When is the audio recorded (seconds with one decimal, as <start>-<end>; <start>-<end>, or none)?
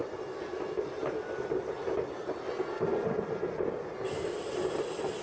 0.0-2.9; 4.7-5.2